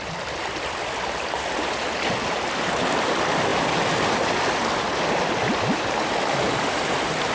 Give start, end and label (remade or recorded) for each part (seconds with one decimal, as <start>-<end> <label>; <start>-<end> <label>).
0.0-7.3 recorded